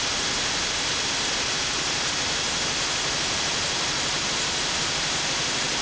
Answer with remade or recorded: recorded